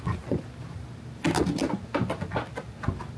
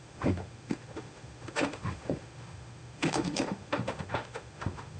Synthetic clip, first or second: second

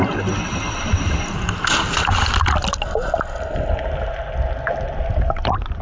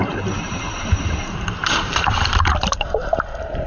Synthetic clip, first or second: second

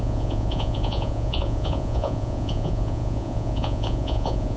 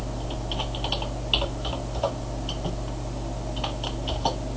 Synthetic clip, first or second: first